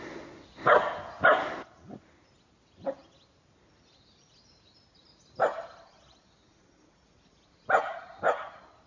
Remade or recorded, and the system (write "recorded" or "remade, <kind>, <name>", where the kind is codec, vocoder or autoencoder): recorded